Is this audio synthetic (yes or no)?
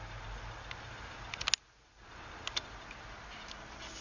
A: no